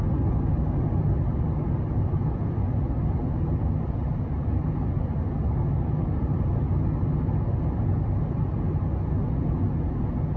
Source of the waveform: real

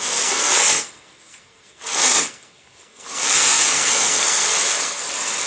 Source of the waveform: fake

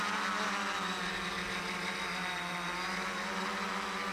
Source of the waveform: real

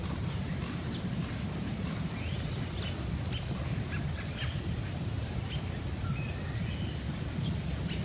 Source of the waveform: real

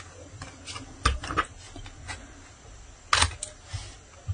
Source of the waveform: real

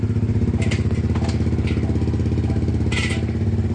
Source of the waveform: real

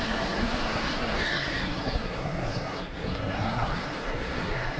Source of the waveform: fake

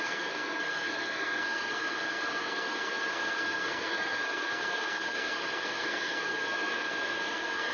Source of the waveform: fake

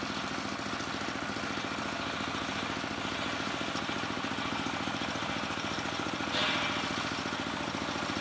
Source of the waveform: real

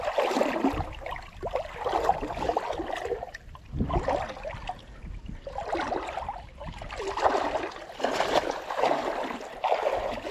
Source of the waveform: real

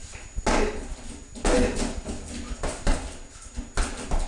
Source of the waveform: real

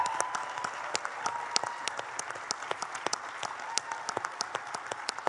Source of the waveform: real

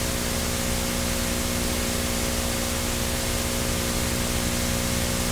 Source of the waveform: real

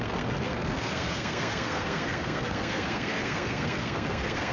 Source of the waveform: fake